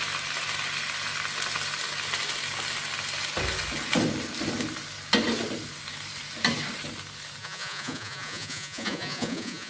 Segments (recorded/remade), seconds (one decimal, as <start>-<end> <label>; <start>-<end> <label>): 0.0-7.4 recorded; 7.4-9.7 remade